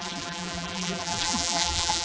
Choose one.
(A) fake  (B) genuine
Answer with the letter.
A